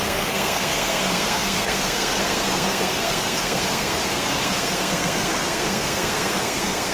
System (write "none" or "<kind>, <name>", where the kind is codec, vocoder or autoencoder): codec, SNAC